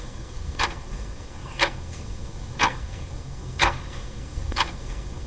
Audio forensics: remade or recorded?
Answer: remade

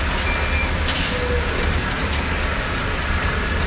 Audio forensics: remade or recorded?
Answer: recorded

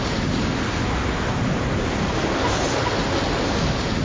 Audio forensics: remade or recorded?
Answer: recorded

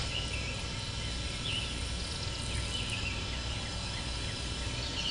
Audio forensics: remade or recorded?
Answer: recorded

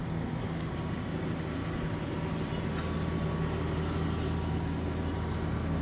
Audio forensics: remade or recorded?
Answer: recorded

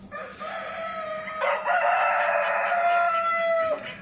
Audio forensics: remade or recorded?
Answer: recorded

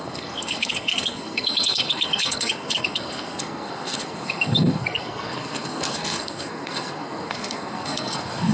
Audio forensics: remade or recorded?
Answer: remade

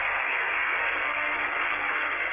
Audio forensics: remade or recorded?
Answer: remade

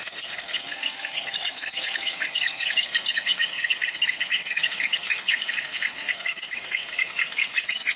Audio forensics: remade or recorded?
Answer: remade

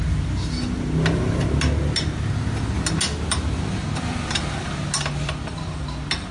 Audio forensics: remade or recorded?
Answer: recorded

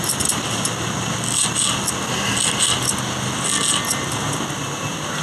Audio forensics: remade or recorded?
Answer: recorded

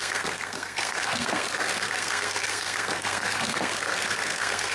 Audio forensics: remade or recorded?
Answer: remade